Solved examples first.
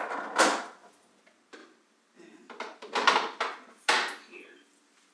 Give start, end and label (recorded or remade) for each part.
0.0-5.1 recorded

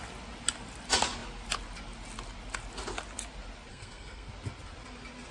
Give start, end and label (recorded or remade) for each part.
0.0-3.7 recorded; 3.7-4.3 remade; 4.3-5.3 recorded

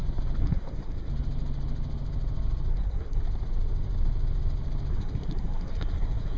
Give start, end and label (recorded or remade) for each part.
0.0-0.4 recorded; 0.4-1.1 remade; 1.1-2.7 recorded; 2.7-3.2 remade; 3.2-4.9 recorded; 4.9-6.4 remade

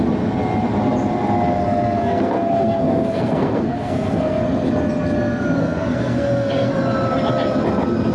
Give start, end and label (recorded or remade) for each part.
0.0-1.6 recorded; 1.6-4.4 remade; 4.4-5.6 recorded; 5.6-6.7 remade; 6.7-8.1 recorded

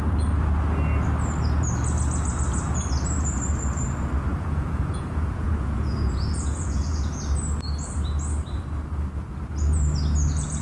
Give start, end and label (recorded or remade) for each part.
0.0-4.3 recorded; 4.3-7.1 remade; 7.1-10.6 recorded

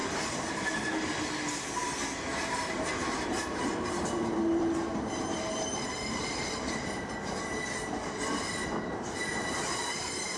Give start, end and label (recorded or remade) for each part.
0.0-0.7 remade; 0.7-2.3 recorded; 2.3-6.2 remade; 6.2-10.4 recorded